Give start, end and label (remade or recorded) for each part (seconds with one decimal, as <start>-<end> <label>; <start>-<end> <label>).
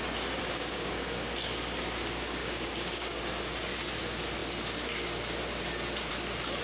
0.0-0.4 recorded; 0.4-0.9 remade; 0.9-2.4 recorded; 2.4-3.2 remade; 3.2-6.6 recorded